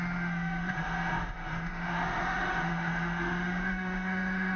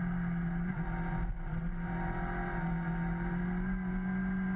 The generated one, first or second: first